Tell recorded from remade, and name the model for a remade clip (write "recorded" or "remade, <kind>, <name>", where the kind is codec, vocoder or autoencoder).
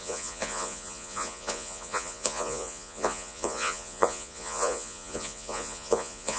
remade, vocoder, Vocos